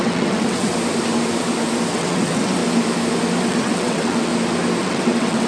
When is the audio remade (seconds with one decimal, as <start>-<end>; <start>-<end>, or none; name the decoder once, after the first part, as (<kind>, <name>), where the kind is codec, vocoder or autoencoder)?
0.0-0.7 (vocoder, WaveNeXt); 1.9-2.6; 3.4-4.3; 4.8-5.5